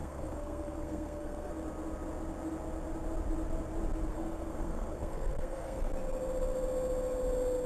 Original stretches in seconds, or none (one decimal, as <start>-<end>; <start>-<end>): 1.5-4.1; 5.9-7.7